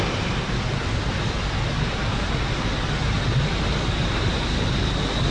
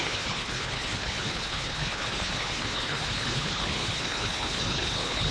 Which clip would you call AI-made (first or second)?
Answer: second